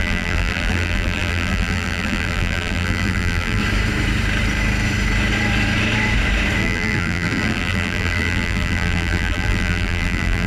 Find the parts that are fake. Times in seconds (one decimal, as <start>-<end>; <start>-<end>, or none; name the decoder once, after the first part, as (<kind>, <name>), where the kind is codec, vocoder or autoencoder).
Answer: 0.0-3.6 (vocoder, BigVGAN v2); 6.6-10.5